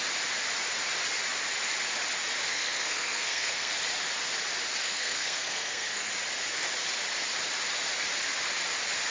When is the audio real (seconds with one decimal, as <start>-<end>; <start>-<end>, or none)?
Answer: 0.0-2.5; 3.7-4.8; 6.1-9.1

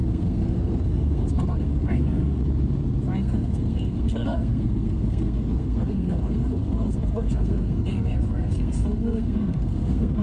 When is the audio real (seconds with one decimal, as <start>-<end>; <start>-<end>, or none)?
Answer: 2.4-3.2

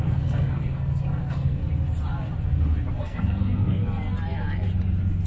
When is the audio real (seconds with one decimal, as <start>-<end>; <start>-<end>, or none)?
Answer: 1.6-2.9; 3.8-5.3

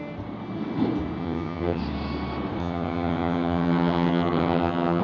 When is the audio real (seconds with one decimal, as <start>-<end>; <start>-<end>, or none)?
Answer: 0.0-1.2; 1.8-2.6

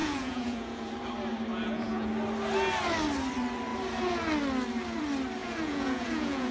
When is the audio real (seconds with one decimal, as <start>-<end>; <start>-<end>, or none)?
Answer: 0.9-1.5; 2.1-5.4

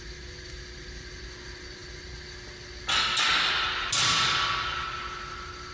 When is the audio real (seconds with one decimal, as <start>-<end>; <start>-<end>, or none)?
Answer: 0.0-5.7

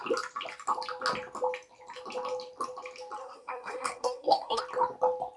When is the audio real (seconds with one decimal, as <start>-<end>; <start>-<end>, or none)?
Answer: 0.0-3.2; 4.6-5.4